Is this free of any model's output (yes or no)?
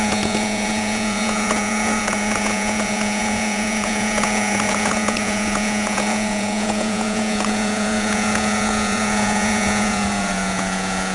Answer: no